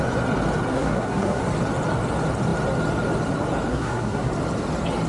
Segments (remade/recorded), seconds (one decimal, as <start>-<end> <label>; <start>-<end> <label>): 0.0-0.7 recorded; 0.7-1.4 remade; 1.4-3.7 recorded; 3.7-4.3 remade; 4.3-5.1 recorded